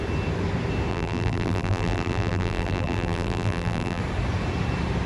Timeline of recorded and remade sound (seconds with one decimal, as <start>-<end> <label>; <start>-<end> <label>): 0.0-0.9 recorded; 0.9-4.0 remade; 4.0-5.1 recorded